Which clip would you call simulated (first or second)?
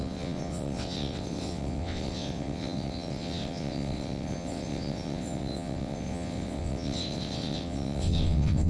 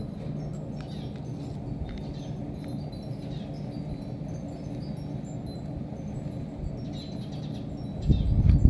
first